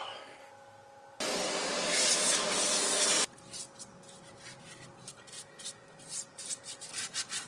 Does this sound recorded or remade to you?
recorded